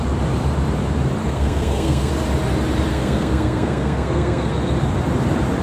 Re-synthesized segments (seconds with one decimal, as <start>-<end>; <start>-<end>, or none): 1.2-2.1; 2.9-4.5